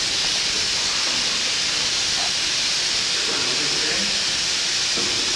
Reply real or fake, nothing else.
real